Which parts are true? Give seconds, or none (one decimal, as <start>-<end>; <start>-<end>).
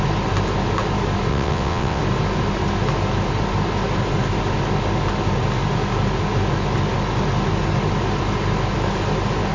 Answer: 0.0-1.3; 2.0-9.5